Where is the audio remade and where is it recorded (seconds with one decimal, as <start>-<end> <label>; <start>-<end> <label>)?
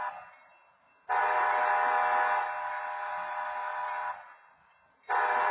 0.0-5.5 recorded